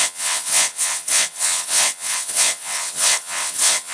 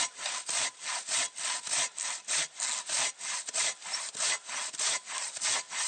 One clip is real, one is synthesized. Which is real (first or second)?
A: second